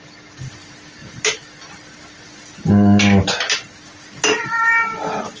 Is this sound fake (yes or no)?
no